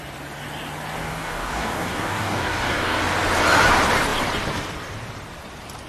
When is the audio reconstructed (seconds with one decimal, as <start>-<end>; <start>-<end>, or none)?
1.0-3.0